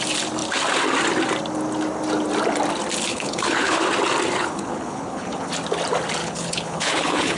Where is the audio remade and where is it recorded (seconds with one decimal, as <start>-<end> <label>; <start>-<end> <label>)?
0.0-3.1 recorded; 3.1-3.8 remade; 3.8-4.4 recorded; 4.4-5.5 remade; 5.5-6.2 recorded; 6.2-7.4 remade